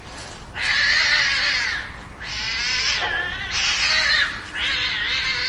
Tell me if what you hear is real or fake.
real